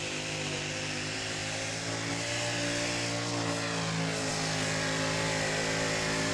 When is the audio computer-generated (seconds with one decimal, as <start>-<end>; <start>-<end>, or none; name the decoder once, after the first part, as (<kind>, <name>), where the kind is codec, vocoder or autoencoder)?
none